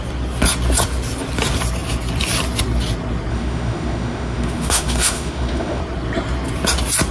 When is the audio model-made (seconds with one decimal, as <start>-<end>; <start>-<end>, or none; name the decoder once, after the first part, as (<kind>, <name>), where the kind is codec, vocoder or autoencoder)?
3.3-5.8 (autoencoder, DAC-VAE)